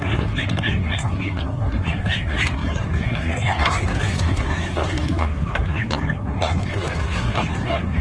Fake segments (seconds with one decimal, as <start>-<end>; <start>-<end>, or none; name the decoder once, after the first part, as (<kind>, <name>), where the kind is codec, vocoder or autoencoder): 0.0-8.0 (codec, SNAC)